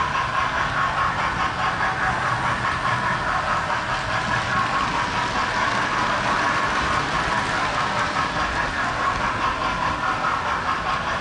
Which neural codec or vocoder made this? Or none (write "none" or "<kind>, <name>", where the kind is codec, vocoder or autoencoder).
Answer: none